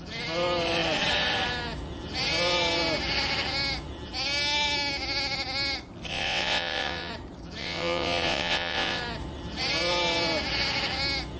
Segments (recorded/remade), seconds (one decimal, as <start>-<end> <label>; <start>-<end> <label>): 0.0-6.1 recorded; 6.1-7.1 remade; 7.1-7.6 recorded; 7.6-9.0 remade; 9.0-11.4 recorded